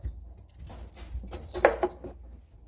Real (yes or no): yes